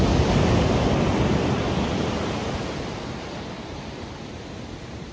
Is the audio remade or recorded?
recorded